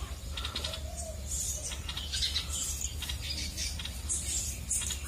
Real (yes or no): yes